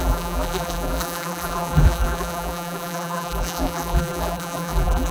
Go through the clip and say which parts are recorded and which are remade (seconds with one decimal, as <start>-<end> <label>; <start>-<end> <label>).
0.0-5.1 remade